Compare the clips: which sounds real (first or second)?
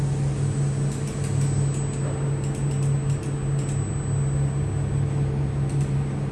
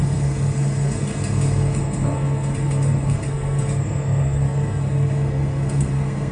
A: first